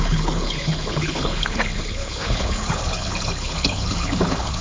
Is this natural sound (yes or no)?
no